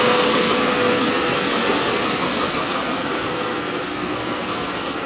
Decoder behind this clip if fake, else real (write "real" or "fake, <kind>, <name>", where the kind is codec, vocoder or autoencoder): fake, codec, SNAC